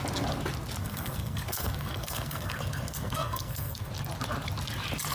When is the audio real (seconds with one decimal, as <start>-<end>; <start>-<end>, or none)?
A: 0.0-0.8; 3.9-5.1